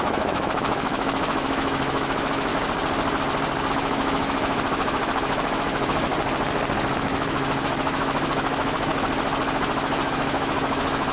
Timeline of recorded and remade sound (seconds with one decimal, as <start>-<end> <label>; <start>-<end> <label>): 0.0-2.5 remade; 2.5-3.7 recorded; 3.7-6.1 remade; 6.1-6.9 recorded; 6.9-8.9 remade; 8.9-10.1 recorded; 10.1-11.1 remade